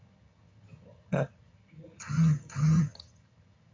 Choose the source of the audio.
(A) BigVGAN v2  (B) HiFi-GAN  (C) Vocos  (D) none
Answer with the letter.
B